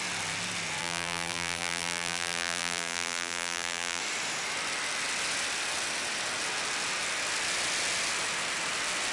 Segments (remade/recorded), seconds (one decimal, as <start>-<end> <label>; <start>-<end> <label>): 0.0-0.8 recorded; 0.8-4.0 remade; 4.0-9.1 recorded